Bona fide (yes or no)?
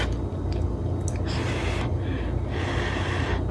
yes